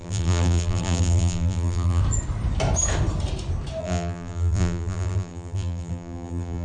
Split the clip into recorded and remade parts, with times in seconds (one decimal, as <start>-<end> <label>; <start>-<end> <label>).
0.0-2.0 remade; 2.0-3.8 recorded; 3.8-6.6 remade